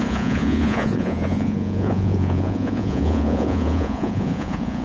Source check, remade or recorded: remade